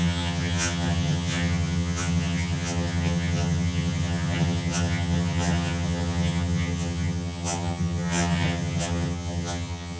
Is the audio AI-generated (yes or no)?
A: yes